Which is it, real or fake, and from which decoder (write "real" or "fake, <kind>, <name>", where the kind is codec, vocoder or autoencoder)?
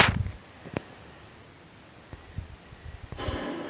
real